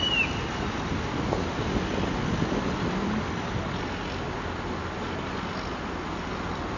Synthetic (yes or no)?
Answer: no